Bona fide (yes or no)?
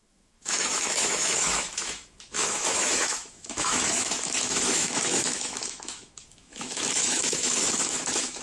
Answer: no